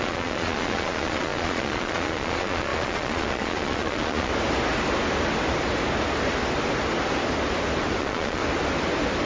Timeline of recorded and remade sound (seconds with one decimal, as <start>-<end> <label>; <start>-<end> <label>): 0.0-4.3 remade; 4.3-8.0 recorded; 8.0-8.4 remade; 8.4-9.3 recorded